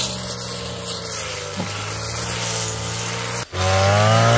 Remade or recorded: recorded